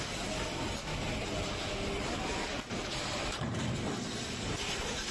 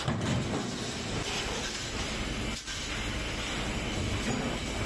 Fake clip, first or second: first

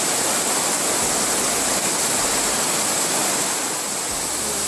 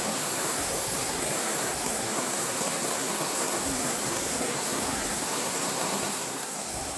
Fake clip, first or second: second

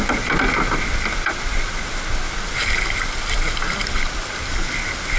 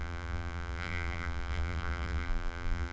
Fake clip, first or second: second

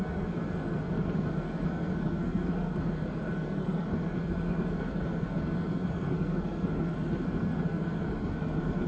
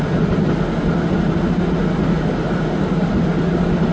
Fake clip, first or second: first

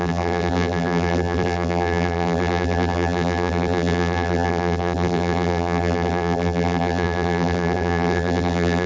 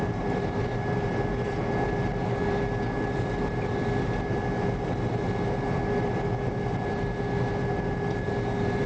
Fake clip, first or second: first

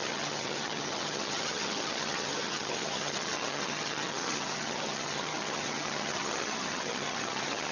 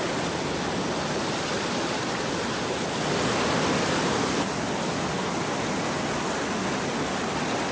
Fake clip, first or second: first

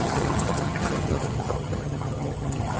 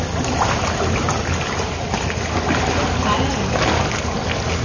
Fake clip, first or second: first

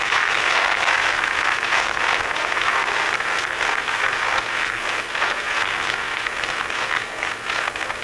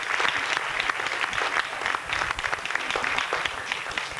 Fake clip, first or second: first